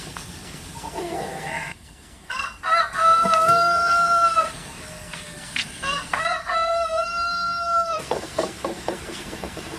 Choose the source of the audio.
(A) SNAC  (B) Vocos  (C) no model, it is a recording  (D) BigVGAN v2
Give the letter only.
A